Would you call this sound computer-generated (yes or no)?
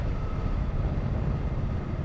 no